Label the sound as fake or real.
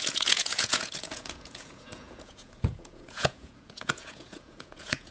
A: fake